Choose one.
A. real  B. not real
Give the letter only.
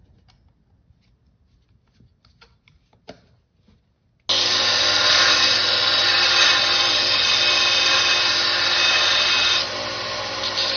A